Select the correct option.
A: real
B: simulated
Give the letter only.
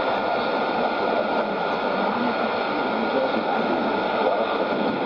A